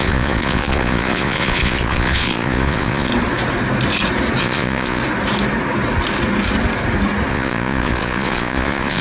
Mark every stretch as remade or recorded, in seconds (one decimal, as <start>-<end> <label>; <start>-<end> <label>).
0.0-3.1 remade; 3.1-4.4 recorded; 4.4-5.0 remade; 5.0-7.3 recorded; 7.3-9.0 remade